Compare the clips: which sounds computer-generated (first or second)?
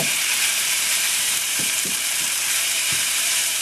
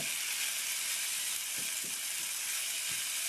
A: first